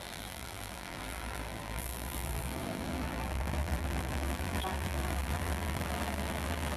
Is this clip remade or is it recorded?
remade